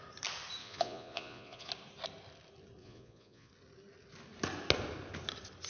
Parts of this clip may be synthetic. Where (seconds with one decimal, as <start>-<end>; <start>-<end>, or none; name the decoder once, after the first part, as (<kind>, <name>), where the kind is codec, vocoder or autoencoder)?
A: 0.6-1.7 (vocoder, Vocos); 2.8-3.5